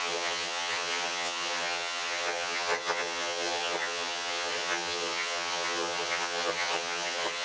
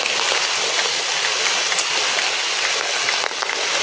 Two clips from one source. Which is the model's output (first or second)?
first